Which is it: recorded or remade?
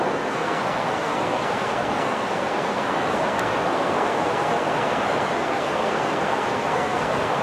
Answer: remade